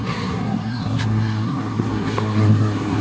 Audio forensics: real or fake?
fake